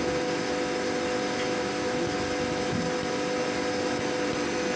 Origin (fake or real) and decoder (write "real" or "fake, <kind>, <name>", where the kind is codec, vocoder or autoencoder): real